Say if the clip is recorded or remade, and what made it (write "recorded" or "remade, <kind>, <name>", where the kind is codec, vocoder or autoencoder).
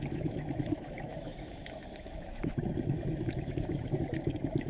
remade, autoencoder, DAC-VAE